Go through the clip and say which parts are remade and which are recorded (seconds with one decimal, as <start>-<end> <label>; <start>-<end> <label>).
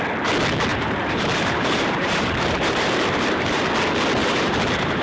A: 0.0-0.7 recorded; 0.7-3.7 remade; 3.7-4.2 recorded; 4.2-5.0 remade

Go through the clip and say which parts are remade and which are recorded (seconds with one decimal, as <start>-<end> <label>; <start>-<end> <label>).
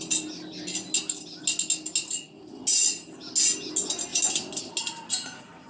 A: 0.0-5.7 recorded